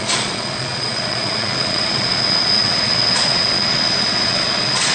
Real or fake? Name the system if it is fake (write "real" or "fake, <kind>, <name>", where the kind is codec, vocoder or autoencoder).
fake, vocoder, Vocos